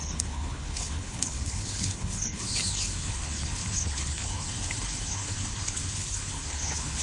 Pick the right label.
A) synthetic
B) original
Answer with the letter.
A